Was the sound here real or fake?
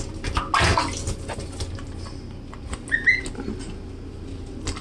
real